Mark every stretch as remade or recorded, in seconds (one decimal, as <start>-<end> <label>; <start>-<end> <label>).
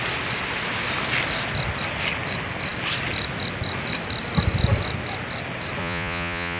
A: 0.0-5.8 recorded; 5.8-6.6 remade